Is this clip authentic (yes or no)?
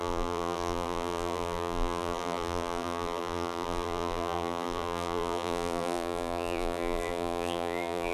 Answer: no